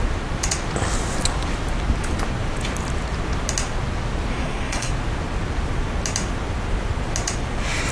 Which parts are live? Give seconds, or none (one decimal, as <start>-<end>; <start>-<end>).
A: 0.0-4.3; 4.9-7.9